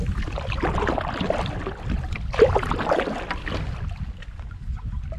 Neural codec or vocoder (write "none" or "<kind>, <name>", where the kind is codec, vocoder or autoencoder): none